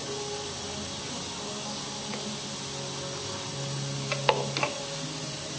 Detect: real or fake real